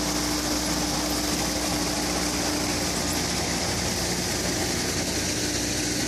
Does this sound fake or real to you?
real